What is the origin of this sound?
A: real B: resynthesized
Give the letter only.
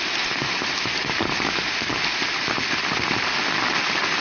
A